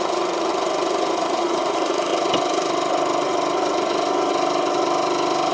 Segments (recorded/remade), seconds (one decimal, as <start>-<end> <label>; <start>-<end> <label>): 0.0-0.5 remade; 0.5-1.1 recorded; 1.1-2.1 remade; 2.1-5.5 recorded